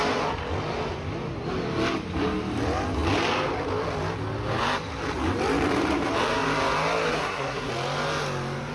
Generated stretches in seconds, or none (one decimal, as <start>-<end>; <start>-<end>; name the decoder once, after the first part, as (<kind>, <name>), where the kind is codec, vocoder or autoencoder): 7.1-7.7 (codec, SNAC)